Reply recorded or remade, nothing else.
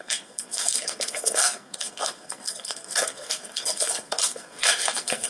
remade